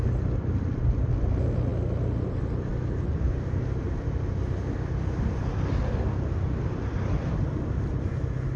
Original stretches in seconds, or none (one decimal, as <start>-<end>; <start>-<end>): 0.0-8.6